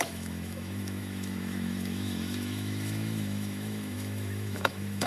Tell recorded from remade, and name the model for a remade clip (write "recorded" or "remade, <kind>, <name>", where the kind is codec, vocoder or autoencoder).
remade, autoencoder, DAC-VAE